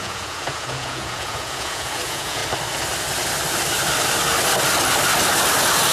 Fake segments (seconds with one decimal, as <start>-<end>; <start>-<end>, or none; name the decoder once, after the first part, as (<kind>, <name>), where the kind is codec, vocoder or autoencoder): 0.0-2.4 (vocoder, Vocos)